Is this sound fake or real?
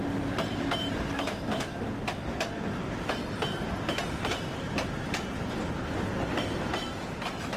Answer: real